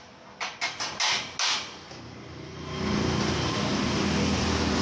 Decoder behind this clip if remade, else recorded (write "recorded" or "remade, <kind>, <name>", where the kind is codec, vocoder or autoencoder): recorded